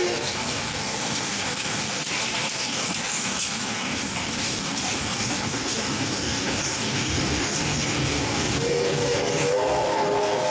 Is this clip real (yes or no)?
no